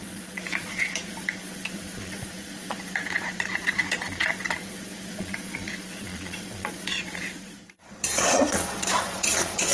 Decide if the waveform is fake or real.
fake